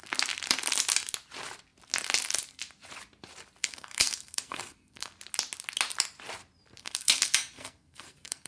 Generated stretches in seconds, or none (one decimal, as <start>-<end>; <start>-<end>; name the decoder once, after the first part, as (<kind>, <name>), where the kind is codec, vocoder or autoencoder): 3.6-5.1 (codec, SNAC); 6.8-8.5